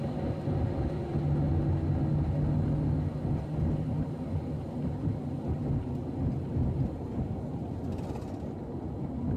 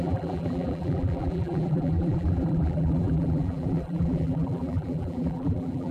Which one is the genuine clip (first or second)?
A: first